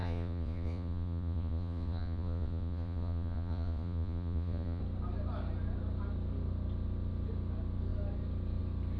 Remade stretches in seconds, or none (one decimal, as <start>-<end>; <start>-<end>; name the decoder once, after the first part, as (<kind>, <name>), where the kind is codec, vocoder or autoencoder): 0.0-4.8 (vocoder, Vocos)